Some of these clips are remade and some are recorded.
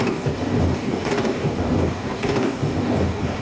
remade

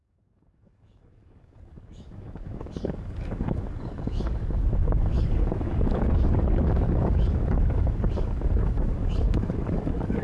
remade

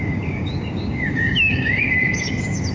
remade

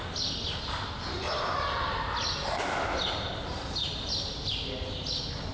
recorded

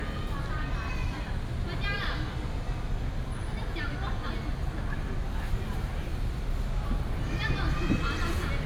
recorded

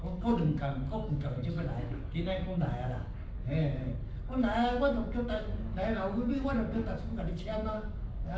remade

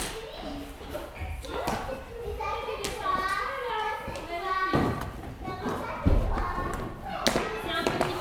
recorded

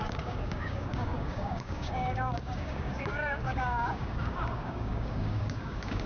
remade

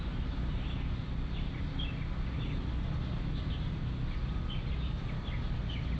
recorded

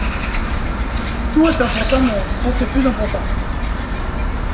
recorded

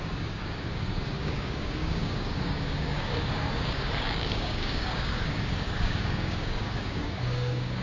remade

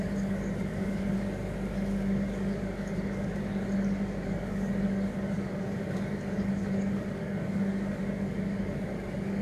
remade